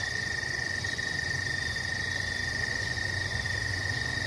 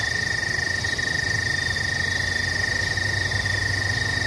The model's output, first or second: first